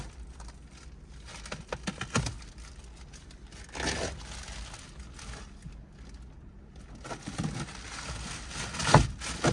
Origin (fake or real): real